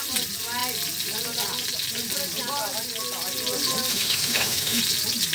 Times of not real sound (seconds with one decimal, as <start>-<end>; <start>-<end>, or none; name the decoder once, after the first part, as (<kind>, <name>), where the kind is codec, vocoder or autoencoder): 3.9-4.8 (autoencoder, DAC-VAE)